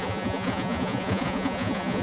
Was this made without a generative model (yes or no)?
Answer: no